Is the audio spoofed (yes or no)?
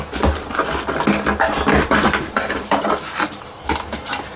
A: no